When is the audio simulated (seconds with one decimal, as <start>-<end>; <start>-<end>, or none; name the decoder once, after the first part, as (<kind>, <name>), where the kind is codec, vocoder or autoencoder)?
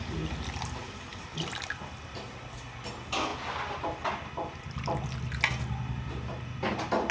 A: none